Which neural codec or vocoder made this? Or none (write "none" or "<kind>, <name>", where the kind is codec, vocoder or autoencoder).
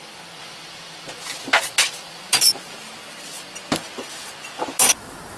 none